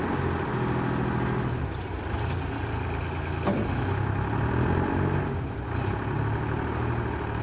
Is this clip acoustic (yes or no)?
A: yes